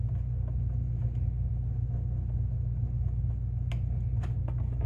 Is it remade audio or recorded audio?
recorded